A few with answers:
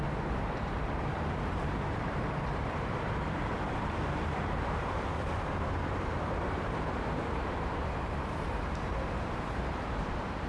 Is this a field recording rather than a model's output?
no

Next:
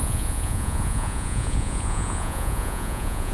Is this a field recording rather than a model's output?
no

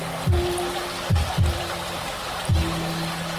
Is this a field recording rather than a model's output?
yes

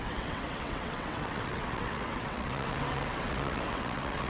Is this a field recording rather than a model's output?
no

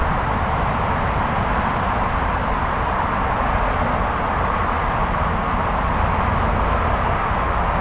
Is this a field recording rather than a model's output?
yes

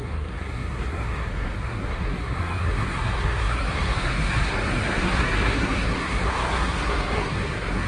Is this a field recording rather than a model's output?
no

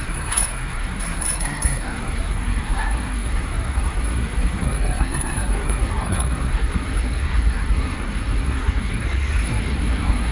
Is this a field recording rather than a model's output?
no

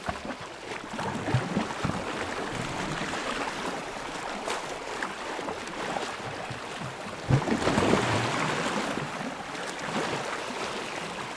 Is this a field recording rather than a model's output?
yes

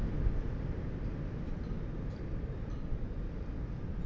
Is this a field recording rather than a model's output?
yes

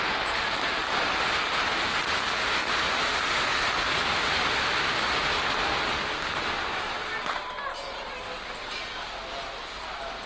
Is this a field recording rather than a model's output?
yes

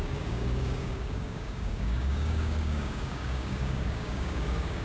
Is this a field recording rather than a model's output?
no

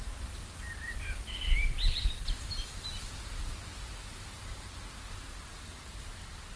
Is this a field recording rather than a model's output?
yes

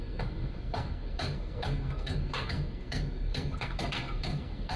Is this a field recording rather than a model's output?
no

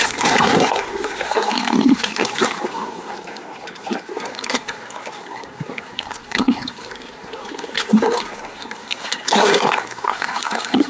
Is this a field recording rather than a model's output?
no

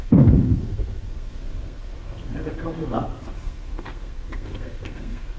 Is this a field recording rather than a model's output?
no